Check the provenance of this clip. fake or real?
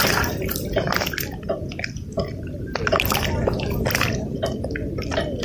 real